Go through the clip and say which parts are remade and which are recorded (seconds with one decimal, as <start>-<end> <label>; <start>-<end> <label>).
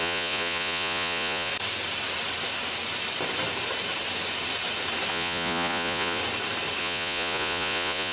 0.0-1.5 remade; 1.5-5.1 recorded; 5.1-6.2 remade; 6.2-6.8 recorded; 6.8-8.1 remade